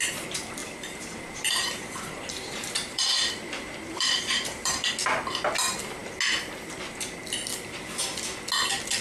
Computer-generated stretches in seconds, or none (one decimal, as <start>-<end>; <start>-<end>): 0.6-4.9